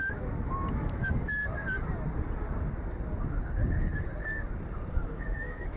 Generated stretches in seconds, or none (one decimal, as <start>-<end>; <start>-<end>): 0.0-1.4; 4.9-5.8